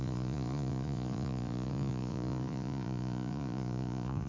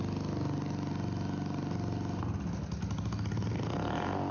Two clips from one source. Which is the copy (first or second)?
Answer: first